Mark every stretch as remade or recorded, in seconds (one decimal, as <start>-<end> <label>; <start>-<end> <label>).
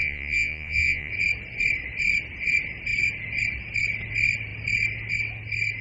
0.0-1.1 remade; 1.1-5.8 recorded